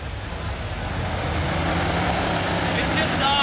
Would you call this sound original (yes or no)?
yes